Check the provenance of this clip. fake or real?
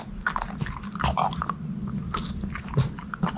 real